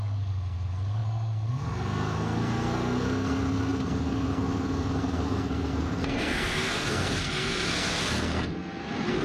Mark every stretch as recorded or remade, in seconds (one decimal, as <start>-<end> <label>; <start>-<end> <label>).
0.0-9.2 remade